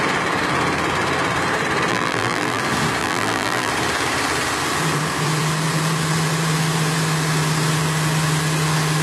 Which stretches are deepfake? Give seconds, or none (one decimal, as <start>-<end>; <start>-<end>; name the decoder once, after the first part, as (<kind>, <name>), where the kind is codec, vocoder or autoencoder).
1.9-2.6 (vocoder, BigVGAN v2); 3.0-3.7